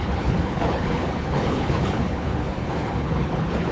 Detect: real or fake fake